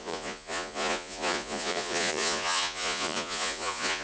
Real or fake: fake